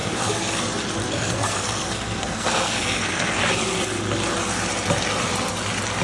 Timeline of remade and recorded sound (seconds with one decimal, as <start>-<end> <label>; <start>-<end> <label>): 0.0-0.6 remade; 0.6-1.0 recorded; 1.0-3.5 remade; 3.5-6.0 recorded